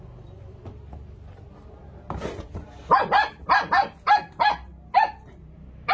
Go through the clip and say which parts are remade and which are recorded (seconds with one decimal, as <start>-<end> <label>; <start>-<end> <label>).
0.0-5.9 recorded